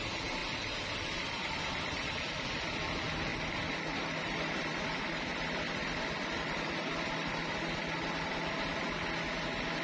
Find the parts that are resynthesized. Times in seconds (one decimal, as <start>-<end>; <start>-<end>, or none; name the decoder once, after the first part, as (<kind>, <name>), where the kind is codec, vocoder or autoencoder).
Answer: 0.4-2.5 (vocoder, BigVGAN v2); 3.3-7.3